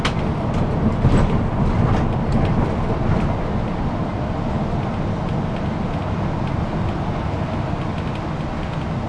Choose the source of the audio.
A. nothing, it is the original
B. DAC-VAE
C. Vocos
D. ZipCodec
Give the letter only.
A